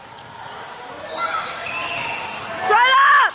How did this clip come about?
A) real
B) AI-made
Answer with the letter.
A